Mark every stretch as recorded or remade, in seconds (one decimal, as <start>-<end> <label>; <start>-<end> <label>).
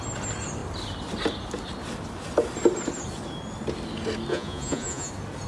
0.0-4.3 recorded; 4.3-5.1 remade; 5.1-5.5 recorded